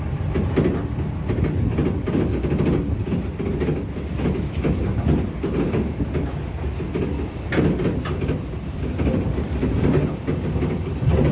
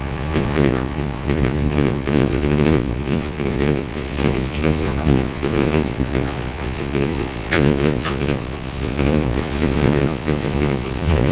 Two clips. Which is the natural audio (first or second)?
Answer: first